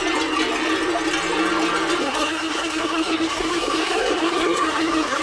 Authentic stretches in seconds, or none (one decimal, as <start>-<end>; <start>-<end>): 0.0-2.0